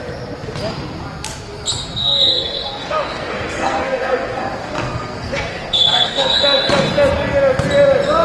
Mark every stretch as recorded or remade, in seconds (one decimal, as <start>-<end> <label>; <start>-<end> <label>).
0.0-2.0 recorded; 2.0-6.4 remade; 6.4-8.2 recorded